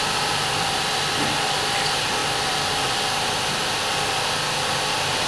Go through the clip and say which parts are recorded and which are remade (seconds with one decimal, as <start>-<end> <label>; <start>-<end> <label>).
0.0-1.2 remade; 1.2-5.3 recorded